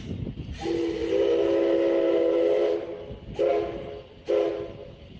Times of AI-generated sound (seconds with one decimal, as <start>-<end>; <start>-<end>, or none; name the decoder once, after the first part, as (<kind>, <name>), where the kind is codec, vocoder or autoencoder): none